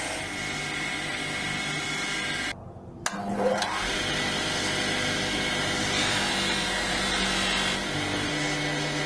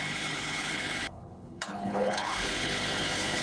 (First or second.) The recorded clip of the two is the first